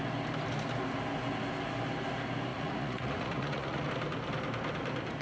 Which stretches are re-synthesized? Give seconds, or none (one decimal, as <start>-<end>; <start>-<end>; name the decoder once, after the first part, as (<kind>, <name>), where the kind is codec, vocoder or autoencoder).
2.5-3.9 (vocoder, Vocos)